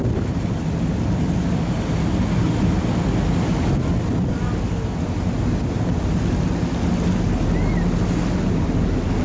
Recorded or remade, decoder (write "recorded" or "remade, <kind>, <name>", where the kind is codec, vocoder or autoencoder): recorded